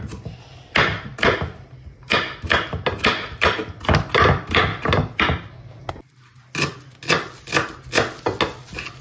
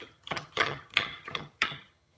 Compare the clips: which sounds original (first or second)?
first